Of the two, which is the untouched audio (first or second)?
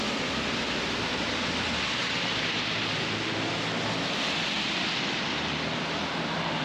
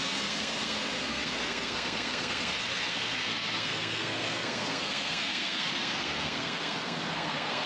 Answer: first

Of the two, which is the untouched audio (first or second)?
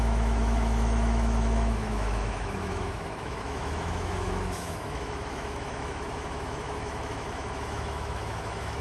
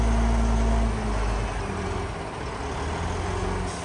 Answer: second